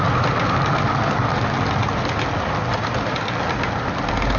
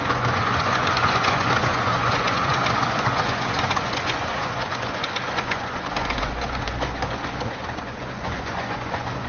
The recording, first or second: first